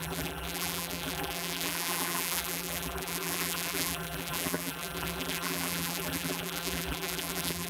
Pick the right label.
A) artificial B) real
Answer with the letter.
A